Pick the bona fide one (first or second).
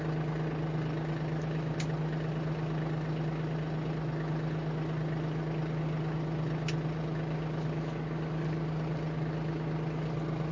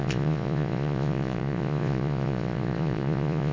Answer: first